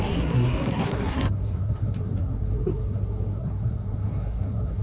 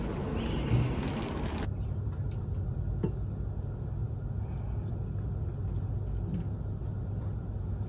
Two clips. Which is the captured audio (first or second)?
second